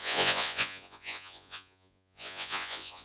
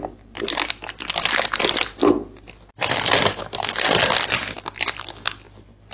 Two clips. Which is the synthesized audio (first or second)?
first